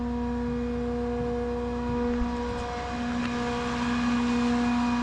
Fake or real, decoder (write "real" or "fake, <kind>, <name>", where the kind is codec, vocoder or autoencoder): real